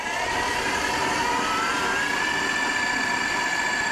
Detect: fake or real real